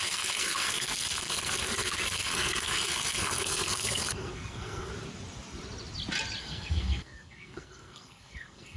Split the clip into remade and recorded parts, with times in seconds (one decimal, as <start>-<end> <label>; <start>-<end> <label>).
0.0-4.9 remade; 4.9-6.4 recorded; 6.4-8.8 remade